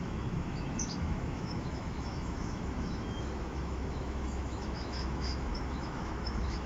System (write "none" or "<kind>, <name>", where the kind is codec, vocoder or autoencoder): autoencoder, DAC-VAE